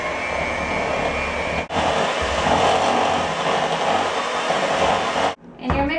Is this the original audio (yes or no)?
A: yes